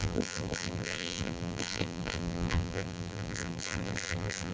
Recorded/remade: remade